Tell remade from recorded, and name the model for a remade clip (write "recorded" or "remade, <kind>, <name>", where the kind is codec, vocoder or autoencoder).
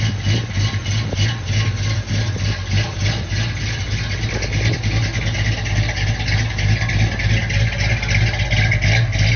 recorded